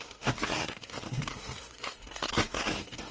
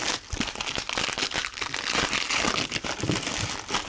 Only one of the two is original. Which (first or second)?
second